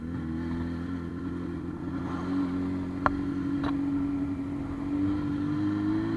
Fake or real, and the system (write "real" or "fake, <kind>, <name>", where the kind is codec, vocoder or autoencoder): real